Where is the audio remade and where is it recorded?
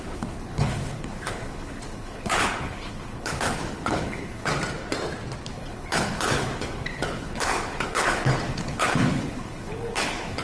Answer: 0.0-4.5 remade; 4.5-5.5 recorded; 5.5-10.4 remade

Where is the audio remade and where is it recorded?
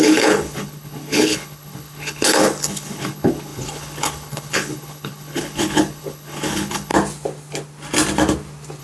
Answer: 0.0-6.9 remade; 6.9-8.8 recorded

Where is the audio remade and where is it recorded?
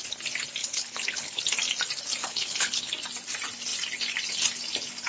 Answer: 0.0-0.6 recorded; 0.6-1.4 remade; 1.4-2.2 recorded; 2.2-2.9 remade; 2.9-5.1 recorded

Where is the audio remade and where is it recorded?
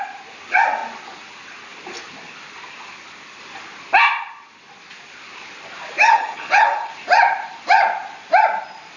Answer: 0.0-6.1 recorded; 6.1-6.9 remade; 6.9-9.0 recorded